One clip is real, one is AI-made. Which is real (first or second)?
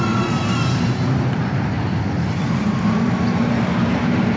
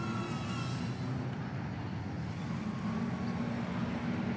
second